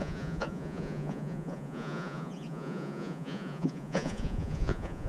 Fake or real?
fake